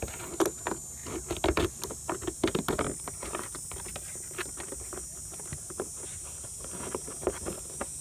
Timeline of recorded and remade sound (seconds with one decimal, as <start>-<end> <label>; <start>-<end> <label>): 0.0-8.0 recorded